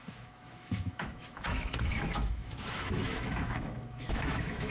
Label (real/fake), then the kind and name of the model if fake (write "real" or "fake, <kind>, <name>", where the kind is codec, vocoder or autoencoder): fake, autoencoder, DAC-VAE